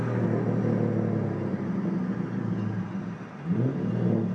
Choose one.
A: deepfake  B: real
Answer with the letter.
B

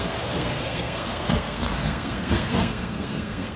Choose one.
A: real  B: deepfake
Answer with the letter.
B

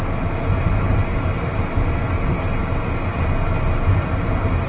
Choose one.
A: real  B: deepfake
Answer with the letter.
A